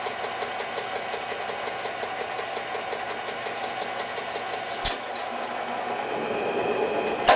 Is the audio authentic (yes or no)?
yes